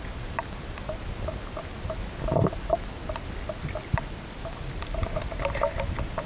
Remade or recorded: recorded